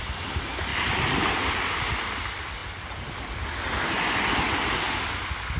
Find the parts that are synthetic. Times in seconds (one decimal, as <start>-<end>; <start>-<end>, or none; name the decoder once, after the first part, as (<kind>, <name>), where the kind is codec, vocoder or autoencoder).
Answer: none